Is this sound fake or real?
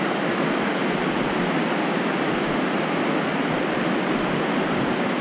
real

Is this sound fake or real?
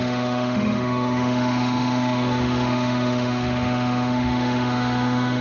fake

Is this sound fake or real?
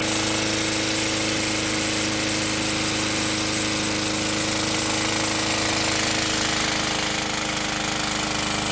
real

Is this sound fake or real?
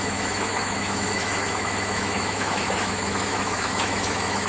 fake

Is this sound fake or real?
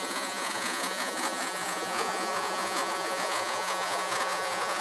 fake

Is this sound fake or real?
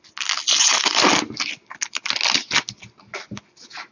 real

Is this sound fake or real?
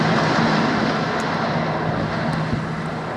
real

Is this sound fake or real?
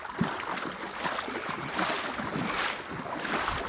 real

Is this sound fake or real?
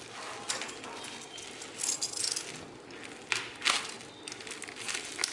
real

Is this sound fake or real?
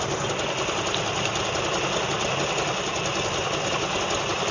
real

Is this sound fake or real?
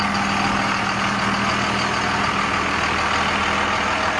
real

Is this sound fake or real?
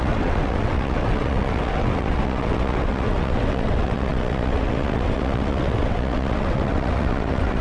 fake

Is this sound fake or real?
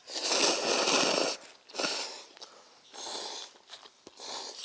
real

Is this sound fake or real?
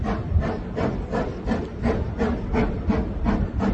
real